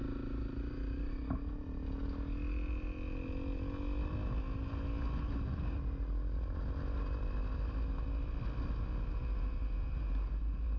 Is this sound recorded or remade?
recorded